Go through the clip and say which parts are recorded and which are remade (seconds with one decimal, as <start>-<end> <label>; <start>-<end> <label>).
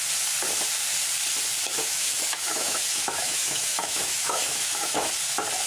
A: 0.0-1.8 recorded; 1.8-5.1 remade; 5.1-5.7 recorded